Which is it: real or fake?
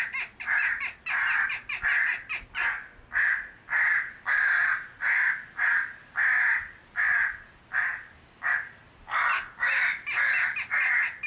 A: real